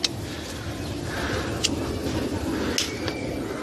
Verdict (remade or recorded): recorded